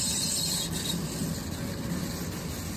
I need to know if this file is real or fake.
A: real